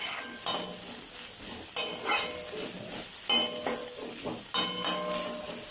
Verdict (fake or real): real